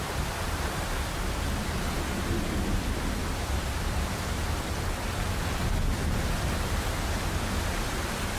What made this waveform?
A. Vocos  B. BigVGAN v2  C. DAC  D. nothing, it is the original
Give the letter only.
B